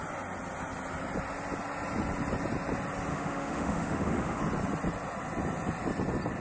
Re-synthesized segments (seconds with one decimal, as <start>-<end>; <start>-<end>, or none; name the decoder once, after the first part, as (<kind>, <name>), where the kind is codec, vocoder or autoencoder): 3.1-4.4 (autoencoder, DAC-VAE)